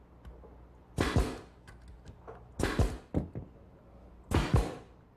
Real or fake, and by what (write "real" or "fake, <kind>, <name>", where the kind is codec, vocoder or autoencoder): real